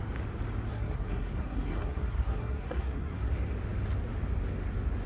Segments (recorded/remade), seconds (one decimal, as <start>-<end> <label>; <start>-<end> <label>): 0.0-0.7 recorded; 0.7-3.3 remade; 3.3-5.1 recorded